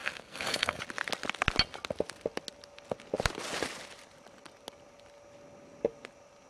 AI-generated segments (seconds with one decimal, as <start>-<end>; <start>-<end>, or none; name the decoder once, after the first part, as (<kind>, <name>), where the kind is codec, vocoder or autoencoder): 0.0-0.8 (codec, SNAC)